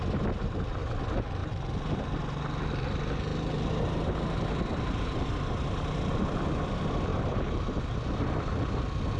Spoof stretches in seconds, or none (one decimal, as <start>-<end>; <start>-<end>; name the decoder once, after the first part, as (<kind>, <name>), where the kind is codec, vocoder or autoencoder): 1.4-2.0 (vocoder, BigVGAN v2); 7.1-7.8